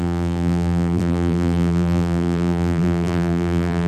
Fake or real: fake